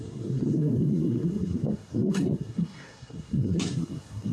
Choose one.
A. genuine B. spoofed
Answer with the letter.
B